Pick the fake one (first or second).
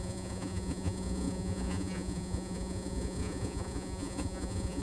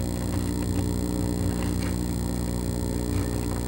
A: first